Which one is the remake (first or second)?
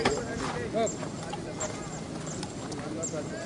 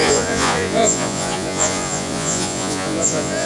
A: second